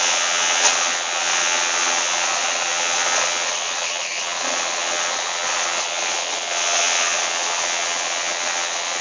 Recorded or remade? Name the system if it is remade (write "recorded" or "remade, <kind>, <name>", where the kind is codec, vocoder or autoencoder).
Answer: remade, vocoder, WaveNeXt